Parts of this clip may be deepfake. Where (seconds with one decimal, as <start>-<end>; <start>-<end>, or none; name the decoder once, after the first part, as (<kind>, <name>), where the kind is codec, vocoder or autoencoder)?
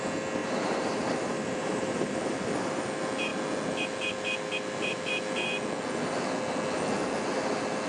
0.4-2.4 (vocoder, BigVGAN v2)